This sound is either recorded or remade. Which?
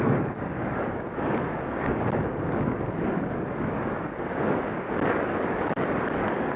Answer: remade